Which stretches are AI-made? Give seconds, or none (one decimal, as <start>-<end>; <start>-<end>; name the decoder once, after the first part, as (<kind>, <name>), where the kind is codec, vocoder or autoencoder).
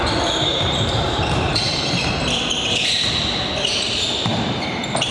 0.5-2.1 (vocoder, BigVGAN v2); 4.3-5.1